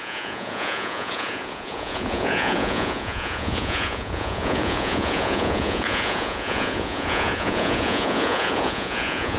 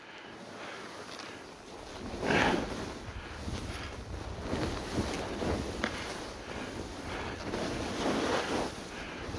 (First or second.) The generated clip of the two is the first